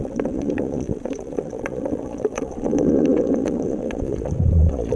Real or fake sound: fake